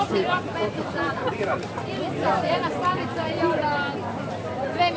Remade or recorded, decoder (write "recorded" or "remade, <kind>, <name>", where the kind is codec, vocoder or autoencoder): remade, vocoder, BigVGAN v2